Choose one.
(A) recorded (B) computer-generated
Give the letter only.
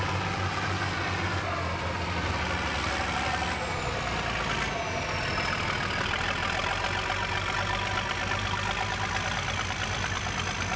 A